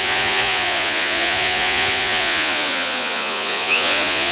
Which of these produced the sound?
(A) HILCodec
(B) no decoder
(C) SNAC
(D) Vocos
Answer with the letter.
D